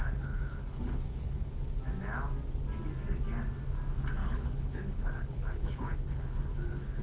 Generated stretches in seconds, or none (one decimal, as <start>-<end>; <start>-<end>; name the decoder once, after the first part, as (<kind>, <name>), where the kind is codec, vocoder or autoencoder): 0.0-1.5 (codec, HILCodec); 4.2-7.0